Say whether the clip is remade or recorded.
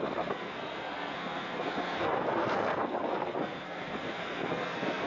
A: remade